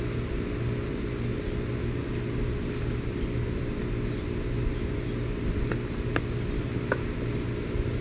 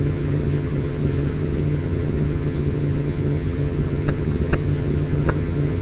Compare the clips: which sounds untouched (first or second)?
first